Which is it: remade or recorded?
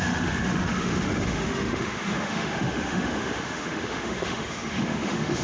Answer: remade